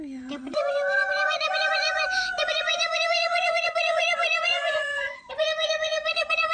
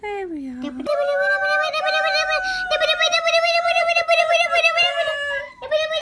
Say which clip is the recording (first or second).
second